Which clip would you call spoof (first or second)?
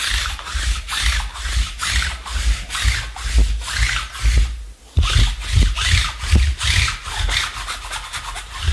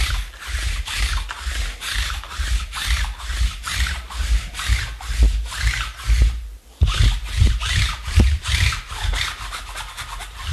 second